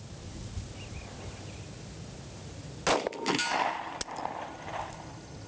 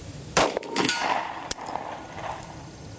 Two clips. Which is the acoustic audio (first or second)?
first